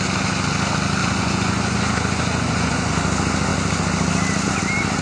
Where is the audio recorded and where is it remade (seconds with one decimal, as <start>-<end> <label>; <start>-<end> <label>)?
0.0-1.0 recorded; 1.0-2.9 remade; 2.9-5.0 recorded